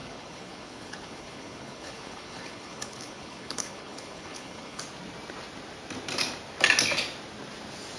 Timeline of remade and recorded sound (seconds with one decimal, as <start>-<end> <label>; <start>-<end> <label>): 0.0-4.8 remade; 4.8-8.0 recorded